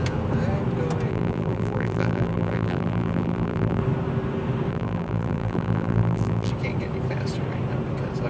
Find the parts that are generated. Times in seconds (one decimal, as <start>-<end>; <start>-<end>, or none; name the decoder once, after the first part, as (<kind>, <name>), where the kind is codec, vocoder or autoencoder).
1.1-3.8 (vocoder, BigVGAN v2); 4.7-6.5